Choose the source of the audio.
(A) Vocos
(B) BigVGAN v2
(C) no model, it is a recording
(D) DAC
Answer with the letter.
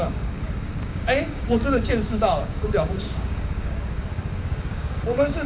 D